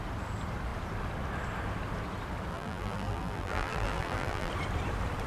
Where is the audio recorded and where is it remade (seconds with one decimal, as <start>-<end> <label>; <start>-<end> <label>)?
0.0-2.5 recorded; 2.5-4.5 remade; 4.5-5.3 recorded